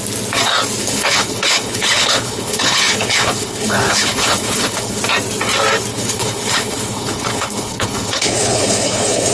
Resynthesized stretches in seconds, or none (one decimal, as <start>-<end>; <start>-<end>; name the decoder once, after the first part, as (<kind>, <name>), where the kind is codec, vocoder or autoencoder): 0.8-5.0 (codec, HILCodec); 5.9-9.3